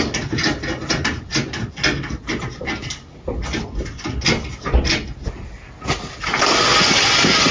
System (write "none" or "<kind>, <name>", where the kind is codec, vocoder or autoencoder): none